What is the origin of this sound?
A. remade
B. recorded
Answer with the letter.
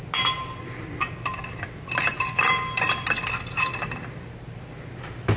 B